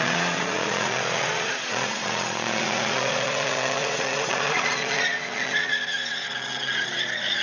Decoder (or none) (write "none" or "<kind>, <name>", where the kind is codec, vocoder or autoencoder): vocoder, Vocos